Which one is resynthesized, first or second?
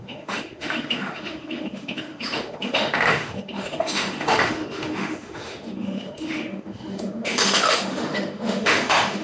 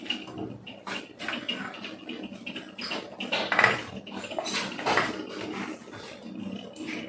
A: first